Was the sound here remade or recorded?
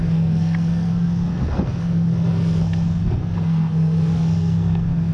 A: remade